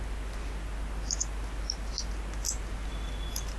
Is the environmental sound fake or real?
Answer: real